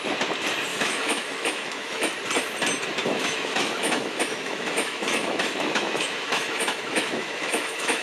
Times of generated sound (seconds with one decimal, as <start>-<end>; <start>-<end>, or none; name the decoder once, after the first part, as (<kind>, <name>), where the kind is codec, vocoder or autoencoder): 0.7-2.1 (autoencoder, DAC-VAE); 3.0-8.0